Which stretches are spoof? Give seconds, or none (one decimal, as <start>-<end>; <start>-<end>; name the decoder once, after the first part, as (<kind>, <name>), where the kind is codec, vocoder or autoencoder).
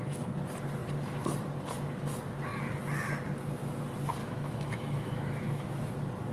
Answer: 4.2-5.8 (autoencoder, DAC-VAE)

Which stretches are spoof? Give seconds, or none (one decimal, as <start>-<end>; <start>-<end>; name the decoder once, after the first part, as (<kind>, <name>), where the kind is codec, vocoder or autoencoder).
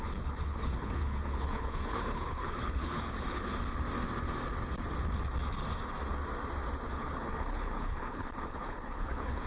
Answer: 0.0-3.5 (codec, HILCodec); 6.9-9.5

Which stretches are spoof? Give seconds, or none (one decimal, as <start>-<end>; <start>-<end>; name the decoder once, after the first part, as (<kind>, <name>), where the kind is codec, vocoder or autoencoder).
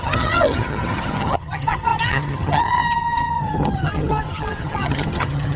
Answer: 0.0-5.6 (vocoder, HiFi-GAN)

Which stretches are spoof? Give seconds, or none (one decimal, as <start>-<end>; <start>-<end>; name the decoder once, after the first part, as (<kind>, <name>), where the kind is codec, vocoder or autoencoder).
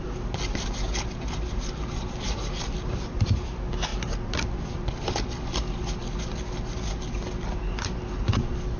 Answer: 3.9-5.2 (vocoder, BigVGAN v2)